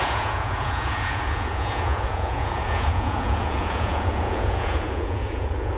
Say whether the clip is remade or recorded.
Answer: remade